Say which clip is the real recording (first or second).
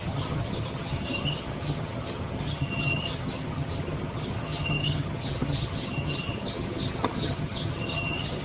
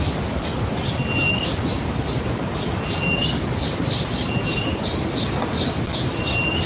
second